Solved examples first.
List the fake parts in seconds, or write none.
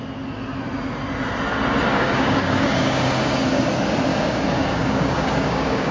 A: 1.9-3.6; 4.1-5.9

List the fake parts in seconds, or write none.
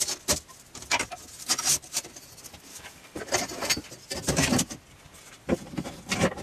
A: 2.7-3.3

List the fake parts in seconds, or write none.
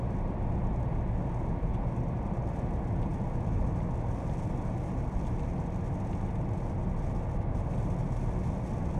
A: none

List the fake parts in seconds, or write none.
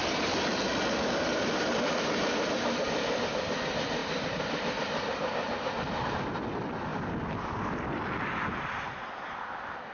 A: none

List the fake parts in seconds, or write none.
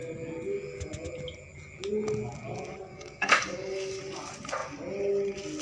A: 2.9-4.0